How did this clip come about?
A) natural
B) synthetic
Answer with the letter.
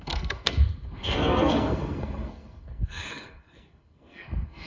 B